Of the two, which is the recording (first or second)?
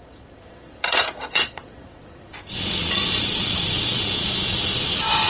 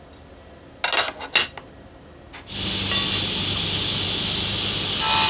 second